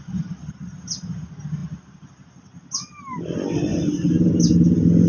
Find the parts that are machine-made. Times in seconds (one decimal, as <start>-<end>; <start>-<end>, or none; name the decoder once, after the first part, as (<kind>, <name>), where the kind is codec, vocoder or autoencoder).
3.7-4.3 (vocoder, BigVGAN v2)